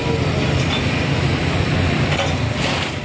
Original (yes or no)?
yes